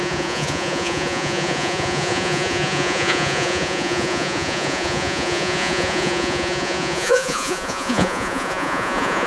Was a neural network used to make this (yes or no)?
yes